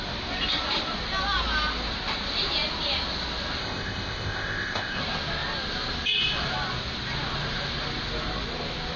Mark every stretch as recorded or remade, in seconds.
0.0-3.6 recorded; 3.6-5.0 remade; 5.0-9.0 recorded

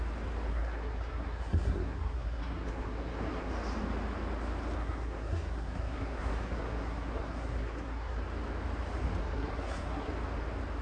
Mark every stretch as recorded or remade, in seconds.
0.0-0.5 recorded; 0.5-3.5 remade; 3.5-4.8 recorded; 4.8-8.2 remade; 8.2-9.2 recorded; 9.2-10.1 remade; 10.1-10.8 recorded

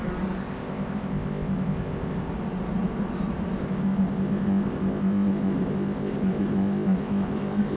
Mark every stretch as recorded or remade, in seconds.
0.0-0.4 recorded; 0.4-2.3 remade; 2.3-3.6 recorded; 3.6-7.8 remade

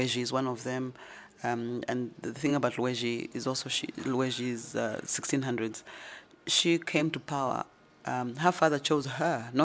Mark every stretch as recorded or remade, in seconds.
0.0-7.0 recorded; 7.0-7.5 remade; 7.5-9.6 recorded